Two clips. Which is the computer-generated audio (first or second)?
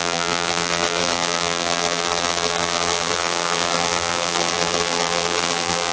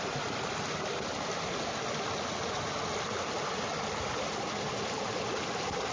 first